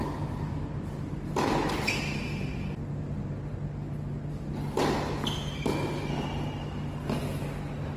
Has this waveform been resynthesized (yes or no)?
no